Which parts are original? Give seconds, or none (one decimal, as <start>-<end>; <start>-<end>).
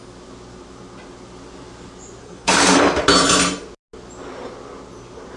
0.0-2.2; 3.0-5.4